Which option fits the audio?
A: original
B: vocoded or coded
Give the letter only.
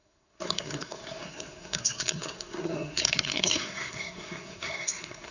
B